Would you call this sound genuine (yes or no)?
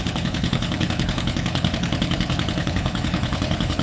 no